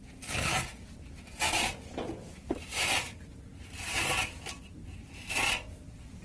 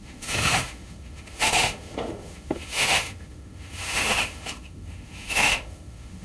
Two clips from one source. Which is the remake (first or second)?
second